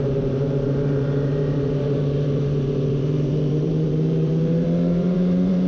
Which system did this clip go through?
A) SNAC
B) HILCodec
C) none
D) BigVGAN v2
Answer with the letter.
D